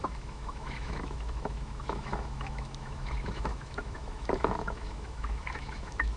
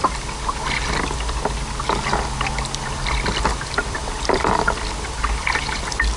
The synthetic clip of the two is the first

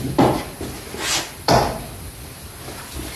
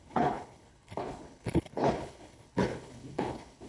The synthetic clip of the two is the second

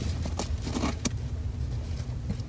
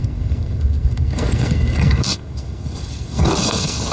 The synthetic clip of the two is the second